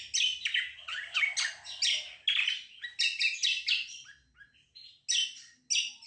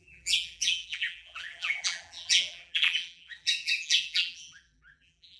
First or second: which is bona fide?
first